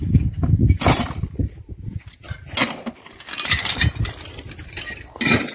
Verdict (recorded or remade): recorded